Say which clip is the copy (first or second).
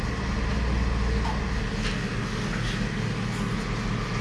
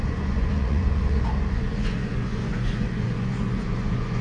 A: second